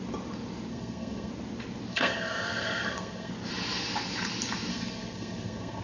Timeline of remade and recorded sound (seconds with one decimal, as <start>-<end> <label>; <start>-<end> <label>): 0.0-0.7 recorded; 0.7-1.3 remade; 1.3-1.9 recorded; 1.9-3.3 remade; 3.3-4.7 recorded; 4.7-5.8 remade